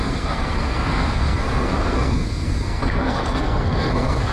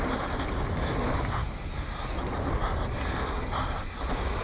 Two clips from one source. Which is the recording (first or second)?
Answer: second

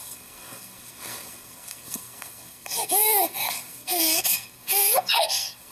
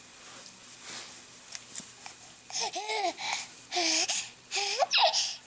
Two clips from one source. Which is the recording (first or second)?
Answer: second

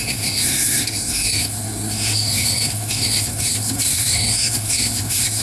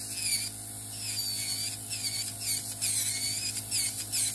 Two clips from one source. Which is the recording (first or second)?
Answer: second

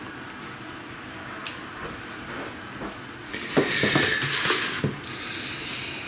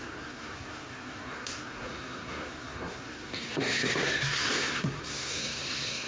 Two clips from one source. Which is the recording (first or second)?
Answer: first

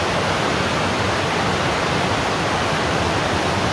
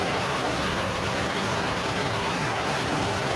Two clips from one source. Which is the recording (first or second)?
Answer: first